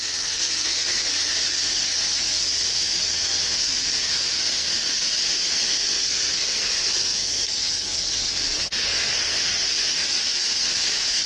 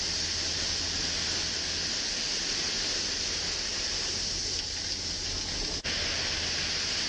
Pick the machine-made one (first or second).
first